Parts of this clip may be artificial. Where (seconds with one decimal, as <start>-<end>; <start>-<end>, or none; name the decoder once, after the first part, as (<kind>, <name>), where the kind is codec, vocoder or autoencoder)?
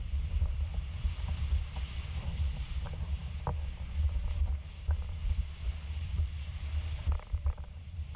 0.0-8.2 (vocoder, BigVGAN v2)